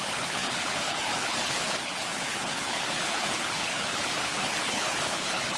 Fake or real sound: fake